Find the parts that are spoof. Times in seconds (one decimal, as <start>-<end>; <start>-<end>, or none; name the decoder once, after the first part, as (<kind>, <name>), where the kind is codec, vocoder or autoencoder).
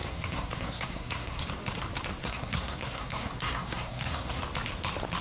0.0-1.4 (codec, SNAC); 2.2-4.4